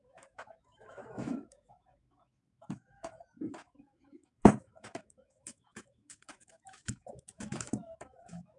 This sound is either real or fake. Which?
fake